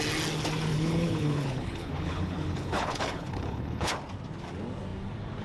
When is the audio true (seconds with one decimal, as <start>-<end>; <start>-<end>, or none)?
0.0-0.7; 3.9-5.4